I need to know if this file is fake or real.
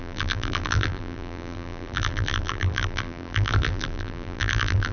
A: fake